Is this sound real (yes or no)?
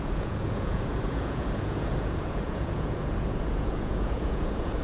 no